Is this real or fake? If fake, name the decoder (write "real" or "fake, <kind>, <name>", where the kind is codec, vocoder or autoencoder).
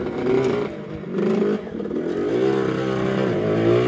real